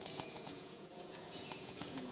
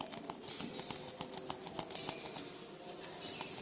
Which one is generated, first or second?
first